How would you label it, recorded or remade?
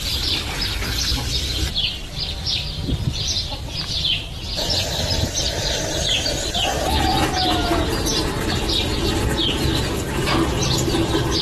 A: recorded